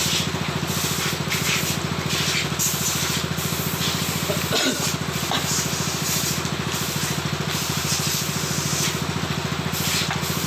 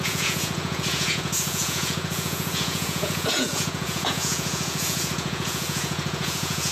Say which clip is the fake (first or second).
second